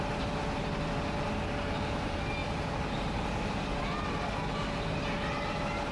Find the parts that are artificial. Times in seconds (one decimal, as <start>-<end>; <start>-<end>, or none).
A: none